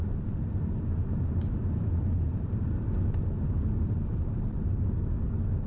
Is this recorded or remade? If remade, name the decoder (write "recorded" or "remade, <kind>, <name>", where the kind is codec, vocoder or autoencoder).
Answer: remade, vocoder, BigVGAN v2